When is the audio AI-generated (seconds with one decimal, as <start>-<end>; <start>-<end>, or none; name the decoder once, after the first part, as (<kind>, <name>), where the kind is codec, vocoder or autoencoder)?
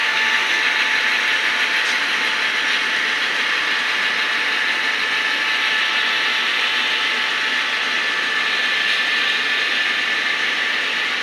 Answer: 0.0-0.6 (codec, SNAC)